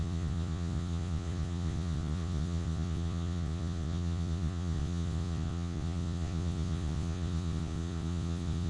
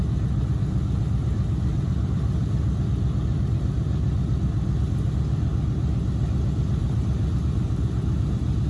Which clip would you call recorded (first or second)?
second